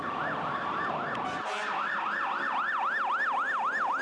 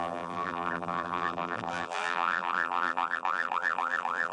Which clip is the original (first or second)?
first